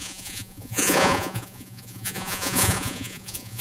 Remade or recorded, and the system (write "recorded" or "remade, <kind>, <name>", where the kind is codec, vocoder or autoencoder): remade, vocoder, Vocos